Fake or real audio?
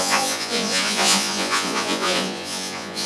fake